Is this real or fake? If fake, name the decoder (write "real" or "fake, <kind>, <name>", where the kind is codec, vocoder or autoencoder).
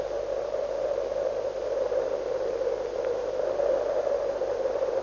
real